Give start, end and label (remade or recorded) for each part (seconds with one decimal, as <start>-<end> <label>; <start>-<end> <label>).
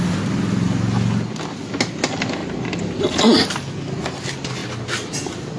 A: 0.0-5.6 recorded